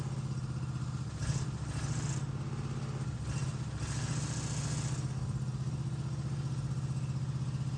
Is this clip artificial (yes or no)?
no